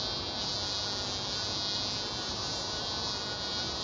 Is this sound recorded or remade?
recorded